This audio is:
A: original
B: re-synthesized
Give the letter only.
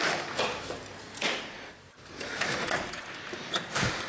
B